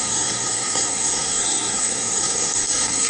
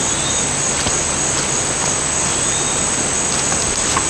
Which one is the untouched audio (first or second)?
second